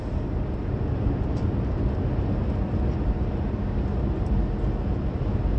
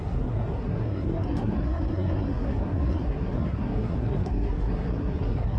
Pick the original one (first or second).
first